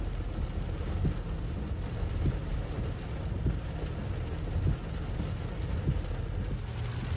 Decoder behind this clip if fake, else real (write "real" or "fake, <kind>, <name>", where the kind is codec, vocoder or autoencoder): real